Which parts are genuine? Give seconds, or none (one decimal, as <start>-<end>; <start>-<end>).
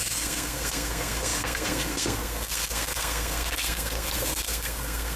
none